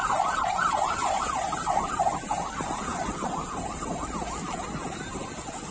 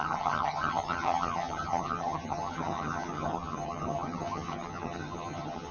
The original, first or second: first